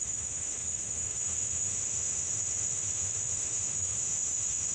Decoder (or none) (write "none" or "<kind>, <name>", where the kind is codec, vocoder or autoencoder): autoencoder, DAC-VAE